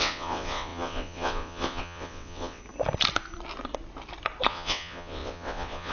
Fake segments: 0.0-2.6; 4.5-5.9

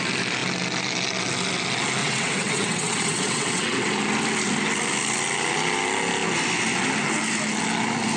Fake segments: 2.0-3.9

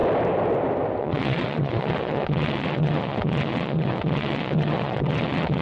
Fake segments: 1.0-5.6

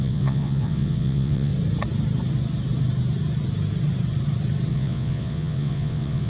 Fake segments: 0.0-1.5; 4.7-6.3

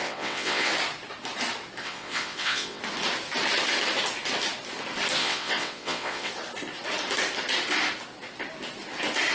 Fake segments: 0.0-0.7; 1.8-2.8; 5.2-6.3

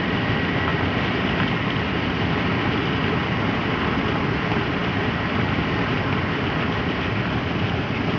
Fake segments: none

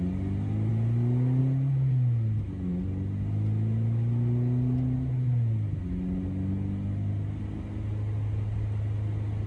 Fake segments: none

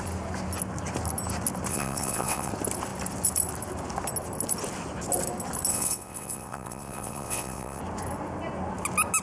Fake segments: 1.7-2.5; 5.7-7.8